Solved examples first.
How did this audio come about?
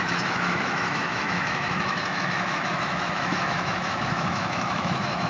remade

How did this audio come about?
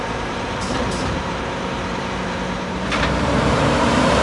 remade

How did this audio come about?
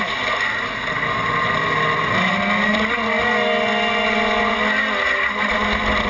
recorded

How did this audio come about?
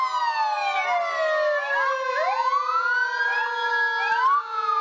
recorded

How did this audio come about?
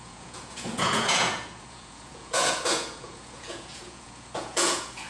remade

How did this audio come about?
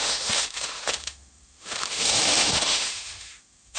remade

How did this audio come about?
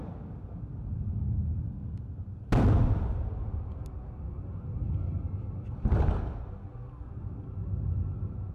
recorded